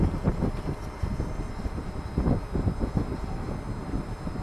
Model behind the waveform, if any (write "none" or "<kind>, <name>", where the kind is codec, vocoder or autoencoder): none